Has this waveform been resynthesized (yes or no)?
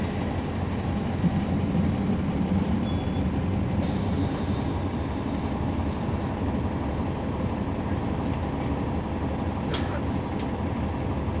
no